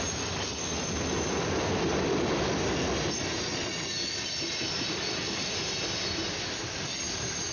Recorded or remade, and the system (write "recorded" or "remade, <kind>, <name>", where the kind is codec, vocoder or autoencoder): recorded